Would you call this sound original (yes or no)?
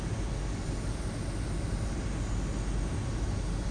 yes